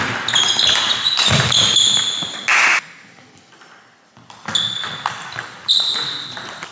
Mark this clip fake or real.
real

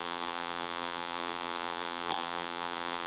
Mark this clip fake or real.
fake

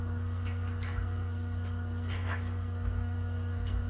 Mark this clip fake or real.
fake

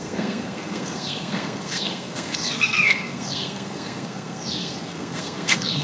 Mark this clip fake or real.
fake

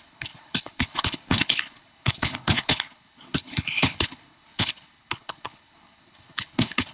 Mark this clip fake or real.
fake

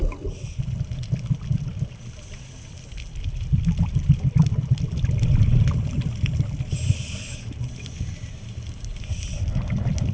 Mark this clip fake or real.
real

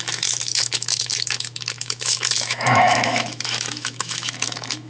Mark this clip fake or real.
fake